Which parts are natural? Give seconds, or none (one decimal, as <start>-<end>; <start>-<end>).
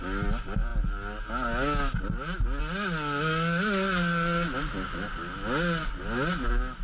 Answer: 0.0-6.8